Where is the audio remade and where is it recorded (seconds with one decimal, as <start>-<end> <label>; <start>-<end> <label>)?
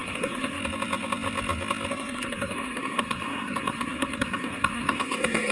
0.0-0.6 remade; 0.6-1.9 recorded; 1.9-5.5 remade